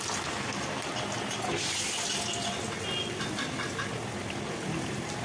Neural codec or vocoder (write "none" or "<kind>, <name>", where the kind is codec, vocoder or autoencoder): none